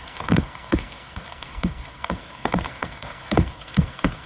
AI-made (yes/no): yes